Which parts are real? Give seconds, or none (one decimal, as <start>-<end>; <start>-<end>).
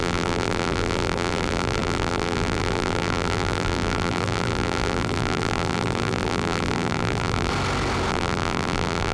7.5-8.1